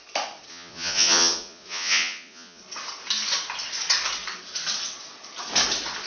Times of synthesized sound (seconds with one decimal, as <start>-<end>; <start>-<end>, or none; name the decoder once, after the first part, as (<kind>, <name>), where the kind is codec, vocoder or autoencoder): 0.5-2.6 (vocoder, Vocos)